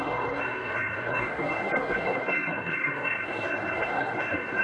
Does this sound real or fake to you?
fake